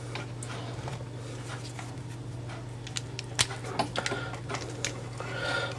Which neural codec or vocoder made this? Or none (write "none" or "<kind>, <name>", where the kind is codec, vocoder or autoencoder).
none